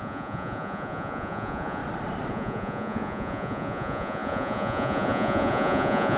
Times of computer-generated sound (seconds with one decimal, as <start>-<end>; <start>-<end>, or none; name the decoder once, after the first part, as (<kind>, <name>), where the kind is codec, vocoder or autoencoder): 0.0-1.8 (vocoder, Vocos); 2.3-6.2